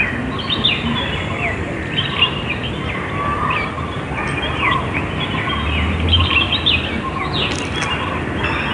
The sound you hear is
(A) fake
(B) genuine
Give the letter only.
B